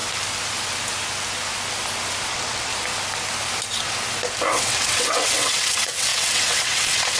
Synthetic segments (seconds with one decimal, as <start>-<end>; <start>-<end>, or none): 2.3-2.7; 4.5-7.2